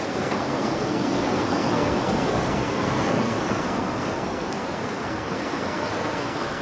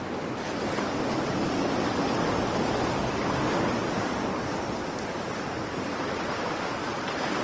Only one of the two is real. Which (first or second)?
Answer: second